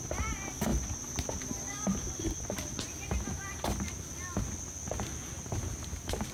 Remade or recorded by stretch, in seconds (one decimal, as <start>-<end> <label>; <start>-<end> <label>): 0.0-6.3 recorded